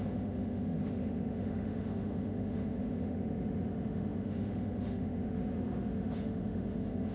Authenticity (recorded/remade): remade